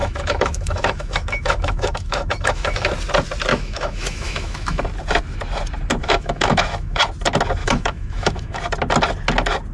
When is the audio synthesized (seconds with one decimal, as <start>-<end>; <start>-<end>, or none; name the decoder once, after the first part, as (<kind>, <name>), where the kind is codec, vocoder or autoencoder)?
0.0-2.9 (autoencoder, DAC-VAE); 3.5-4.8; 6.0-7.0; 7.6-8.6